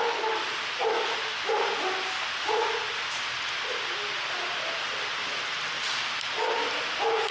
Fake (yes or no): no